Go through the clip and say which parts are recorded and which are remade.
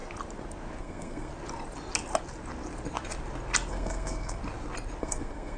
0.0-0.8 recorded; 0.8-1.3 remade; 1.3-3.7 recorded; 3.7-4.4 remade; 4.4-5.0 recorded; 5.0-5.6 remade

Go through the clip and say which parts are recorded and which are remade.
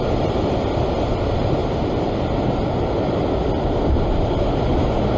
0.0-5.2 recorded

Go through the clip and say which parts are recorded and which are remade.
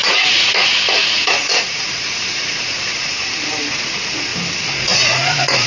0.0-3.2 remade; 3.2-3.7 recorded; 3.7-4.3 remade; 4.3-4.8 recorded; 4.8-5.7 remade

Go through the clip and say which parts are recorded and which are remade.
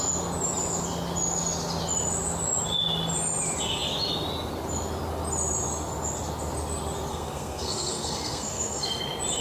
0.0-7.1 recorded; 7.1-9.0 remade; 9.0-9.4 recorded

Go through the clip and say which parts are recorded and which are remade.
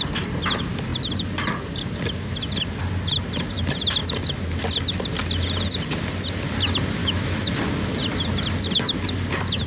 0.0-7.0 recorded; 7.0-7.5 remade; 7.5-9.7 recorded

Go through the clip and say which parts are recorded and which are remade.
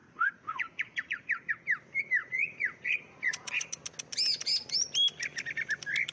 0.0-1.5 remade; 1.5-2.2 recorded; 2.2-3.7 remade; 3.7-6.1 recorded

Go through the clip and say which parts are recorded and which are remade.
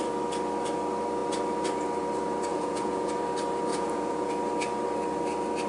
0.0-2.5 recorded; 2.5-3.1 remade; 3.1-3.7 recorded; 3.7-4.3 remade; 4.3-5.7 recorded